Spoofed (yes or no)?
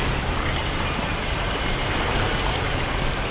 no